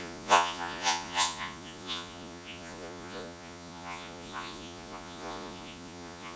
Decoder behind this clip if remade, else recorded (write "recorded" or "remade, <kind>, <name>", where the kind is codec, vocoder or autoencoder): remade, vocoder, Vocos